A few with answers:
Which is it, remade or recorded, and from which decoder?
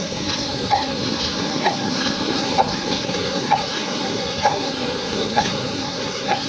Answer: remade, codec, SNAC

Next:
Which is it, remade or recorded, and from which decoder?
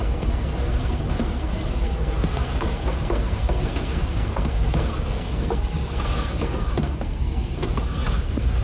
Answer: remade, codec, SNAC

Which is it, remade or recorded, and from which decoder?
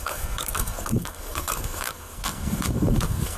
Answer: remade, codec, SNAC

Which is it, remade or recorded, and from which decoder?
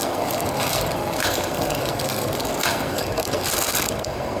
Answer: remade, codec, SNAC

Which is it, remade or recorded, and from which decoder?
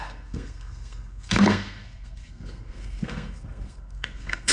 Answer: remade, codec, SNAC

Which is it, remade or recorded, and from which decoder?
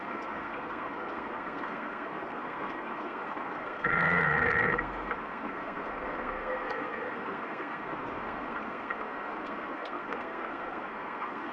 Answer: remade, codec, SNAC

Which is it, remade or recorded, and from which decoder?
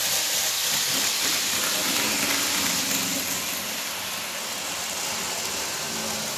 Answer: recorded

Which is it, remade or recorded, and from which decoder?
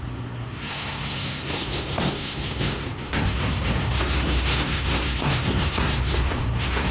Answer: remade, codec, SNAC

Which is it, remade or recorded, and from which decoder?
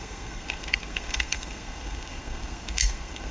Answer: remade, codec, SNAC